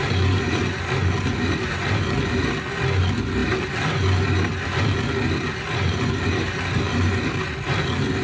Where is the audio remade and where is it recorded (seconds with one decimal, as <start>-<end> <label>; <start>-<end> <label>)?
0.0-8.2 recorded